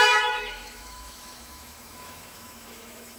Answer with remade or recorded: remade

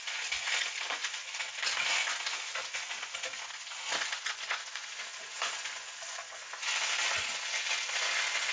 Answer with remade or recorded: remade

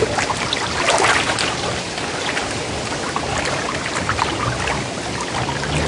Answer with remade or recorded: recorded